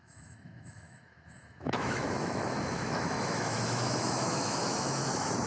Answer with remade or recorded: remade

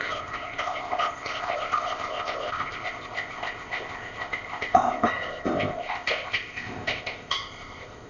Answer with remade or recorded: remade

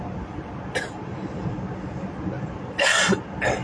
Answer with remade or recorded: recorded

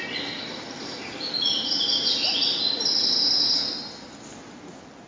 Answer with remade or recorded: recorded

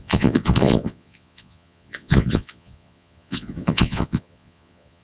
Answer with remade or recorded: remade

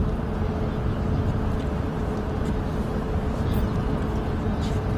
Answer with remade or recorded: recorded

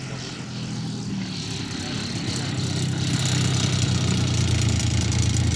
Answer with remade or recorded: recorded